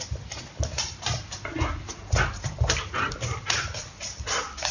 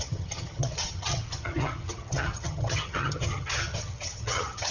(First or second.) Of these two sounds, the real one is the first